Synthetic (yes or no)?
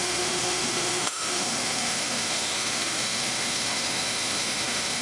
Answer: yes